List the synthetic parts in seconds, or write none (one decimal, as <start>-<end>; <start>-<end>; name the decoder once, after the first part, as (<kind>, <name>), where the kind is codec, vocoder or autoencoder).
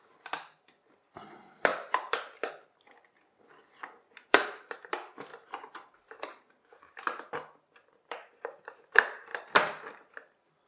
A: 0.0-10.7 (vocoder, BigVGAN v2)